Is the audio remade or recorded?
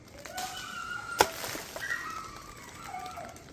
recorded